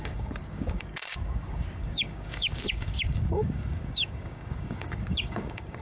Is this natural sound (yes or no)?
no